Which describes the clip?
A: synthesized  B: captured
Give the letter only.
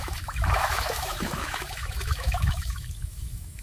A